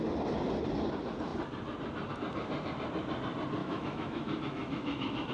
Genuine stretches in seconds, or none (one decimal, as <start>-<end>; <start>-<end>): 0.0-3.6